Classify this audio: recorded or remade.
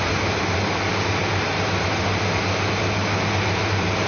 recorded